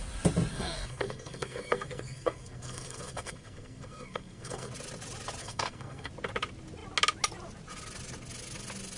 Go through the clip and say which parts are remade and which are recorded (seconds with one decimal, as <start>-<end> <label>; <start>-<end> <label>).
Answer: 0.0-0.5 recorded; 0.5-4.7 remade; 4.7-5.4 recorded; 5.4-6.1 remade; 6.1-9.0 recorded